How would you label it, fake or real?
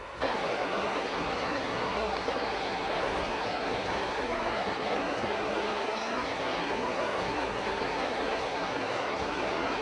fake